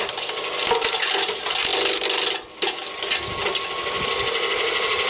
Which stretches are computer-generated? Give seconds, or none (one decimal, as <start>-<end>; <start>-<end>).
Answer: none